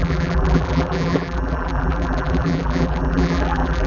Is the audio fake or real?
fake